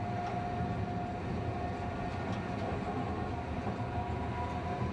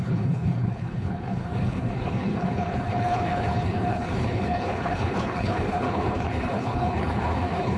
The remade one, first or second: second